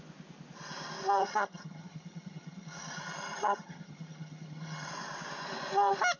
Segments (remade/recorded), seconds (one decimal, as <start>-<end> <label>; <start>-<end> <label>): 0.0-1.2 recorded; 1.2-4.9 remade; 4.9-6.2 recorded